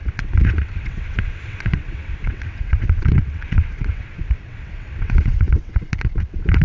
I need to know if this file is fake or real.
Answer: fake